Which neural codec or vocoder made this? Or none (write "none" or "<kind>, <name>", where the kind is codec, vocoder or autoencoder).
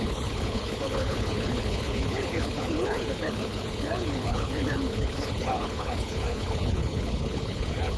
codec, HILCodec